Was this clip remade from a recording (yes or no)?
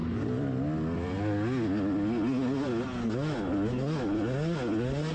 no